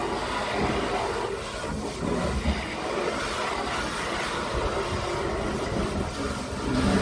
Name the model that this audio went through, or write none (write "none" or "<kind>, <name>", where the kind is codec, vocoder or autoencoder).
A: none